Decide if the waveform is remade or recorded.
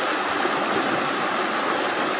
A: recorded